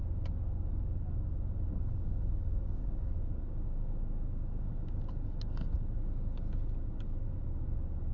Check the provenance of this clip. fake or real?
real